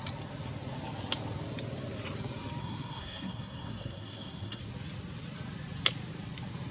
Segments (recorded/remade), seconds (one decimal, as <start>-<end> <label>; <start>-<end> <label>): 0.0-2.6 recorded; 2.6-4.6 remade; 4.6-6.7 recorded